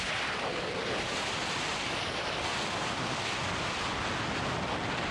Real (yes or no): yes